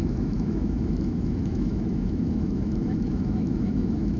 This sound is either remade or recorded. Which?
remade